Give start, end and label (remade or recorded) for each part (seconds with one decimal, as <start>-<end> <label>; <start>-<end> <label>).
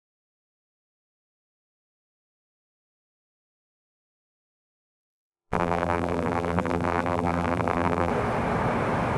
0.0-3.3 recorded; 3.3-8.1 remade; 8.1-9.2 recorded